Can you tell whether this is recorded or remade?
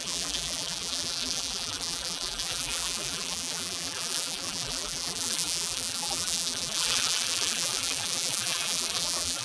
remade